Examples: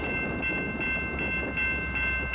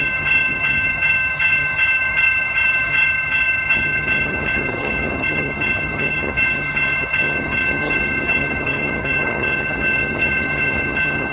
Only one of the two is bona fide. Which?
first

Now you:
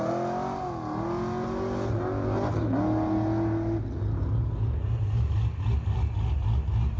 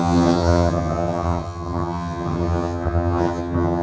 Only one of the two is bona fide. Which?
first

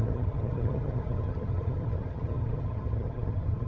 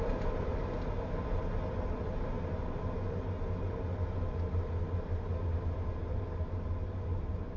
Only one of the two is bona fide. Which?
second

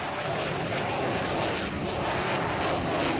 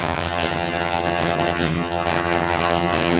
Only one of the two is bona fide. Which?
first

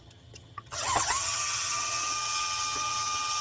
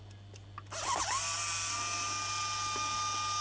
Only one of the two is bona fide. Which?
second